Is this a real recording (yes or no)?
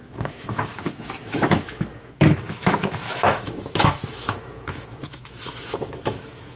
no